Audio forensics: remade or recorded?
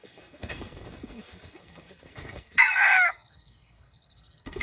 remade